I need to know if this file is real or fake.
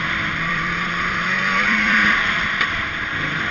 fake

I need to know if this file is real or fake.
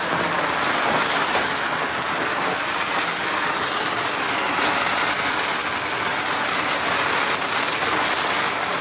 real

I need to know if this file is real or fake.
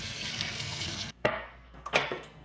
fake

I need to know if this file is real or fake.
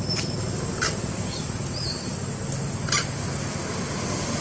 real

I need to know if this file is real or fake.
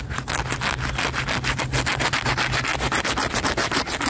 real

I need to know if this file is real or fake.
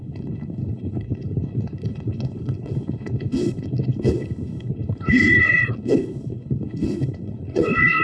fake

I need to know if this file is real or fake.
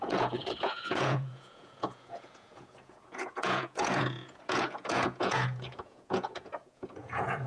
fake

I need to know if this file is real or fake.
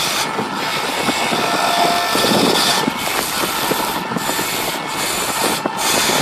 real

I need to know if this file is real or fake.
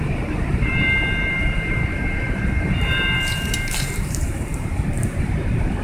fake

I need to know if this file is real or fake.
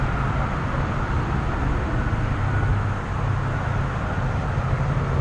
real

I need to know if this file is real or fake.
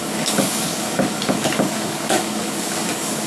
fake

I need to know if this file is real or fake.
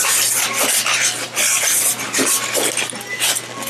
real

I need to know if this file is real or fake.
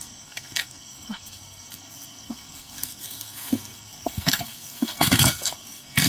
fake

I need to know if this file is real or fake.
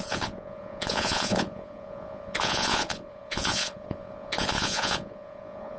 fake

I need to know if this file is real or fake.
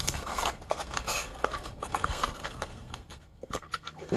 fake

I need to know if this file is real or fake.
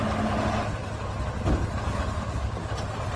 real